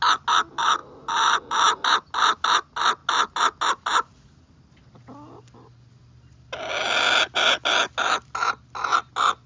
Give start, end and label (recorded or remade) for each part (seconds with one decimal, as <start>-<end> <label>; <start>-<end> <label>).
0.0-9.5 recorded